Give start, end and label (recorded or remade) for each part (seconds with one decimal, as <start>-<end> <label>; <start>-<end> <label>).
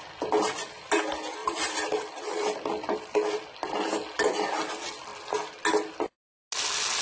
0.0-1.4 recorded; 1.4-2.2 remade; 2.2-7.0 recorded